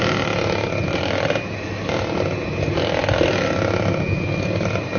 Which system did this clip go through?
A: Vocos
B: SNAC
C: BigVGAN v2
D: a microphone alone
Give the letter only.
D